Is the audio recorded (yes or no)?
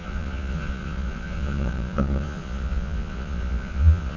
no